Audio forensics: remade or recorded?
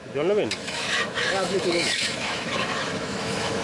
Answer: remade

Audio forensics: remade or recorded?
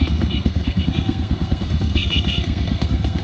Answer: remade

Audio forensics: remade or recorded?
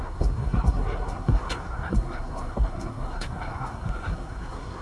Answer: remade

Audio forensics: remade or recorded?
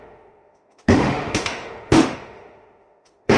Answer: remade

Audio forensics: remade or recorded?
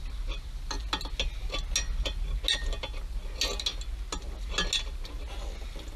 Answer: recorded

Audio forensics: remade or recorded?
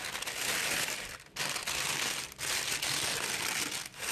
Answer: recorded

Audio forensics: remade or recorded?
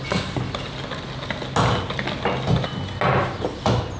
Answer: recorded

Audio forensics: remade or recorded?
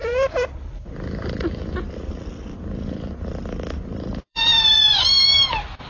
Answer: remade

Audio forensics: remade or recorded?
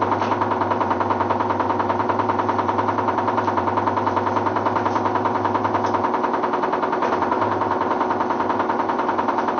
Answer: remade